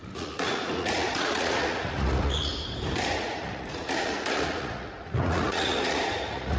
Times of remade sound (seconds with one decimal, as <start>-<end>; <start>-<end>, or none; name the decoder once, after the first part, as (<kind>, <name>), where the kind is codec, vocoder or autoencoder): 0.0-2.5 (vocoder, Vocos); 3.2-6.6